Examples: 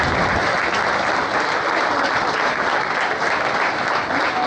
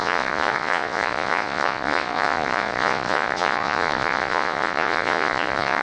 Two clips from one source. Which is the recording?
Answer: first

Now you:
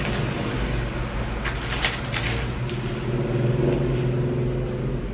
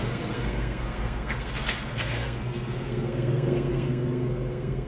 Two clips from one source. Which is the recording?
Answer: first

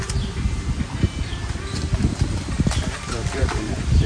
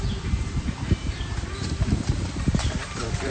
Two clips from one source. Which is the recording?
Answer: first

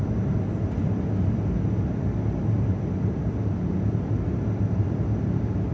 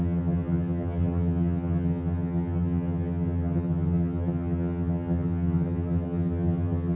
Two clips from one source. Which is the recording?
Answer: first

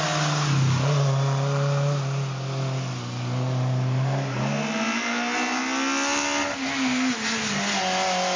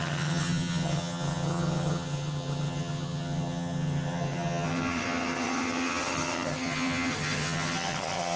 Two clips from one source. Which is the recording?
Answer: first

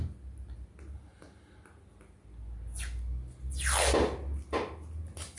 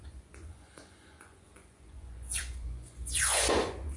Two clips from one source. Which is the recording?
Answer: first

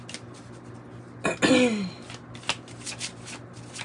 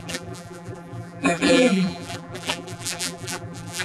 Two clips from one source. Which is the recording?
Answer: first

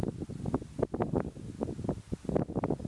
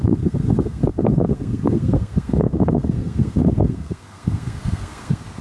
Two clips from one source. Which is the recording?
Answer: first